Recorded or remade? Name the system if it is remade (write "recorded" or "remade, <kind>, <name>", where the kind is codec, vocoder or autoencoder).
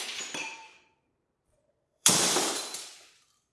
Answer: remade, vocoder, BigVGAN v2